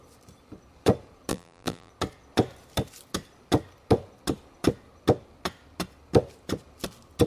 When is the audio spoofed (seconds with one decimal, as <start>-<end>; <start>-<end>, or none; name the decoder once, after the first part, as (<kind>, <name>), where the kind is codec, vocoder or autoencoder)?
1.3-1.9 (vocoder, BigVGAN v2)